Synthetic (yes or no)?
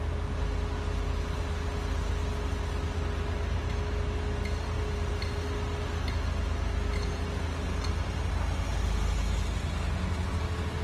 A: no